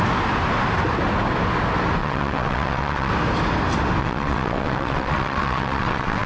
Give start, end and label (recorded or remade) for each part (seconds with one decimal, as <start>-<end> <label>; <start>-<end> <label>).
0.0-2.0 recorded; 2.0-3.1 remade; 3.1-4.0 recorded; 4.0-6.3 remade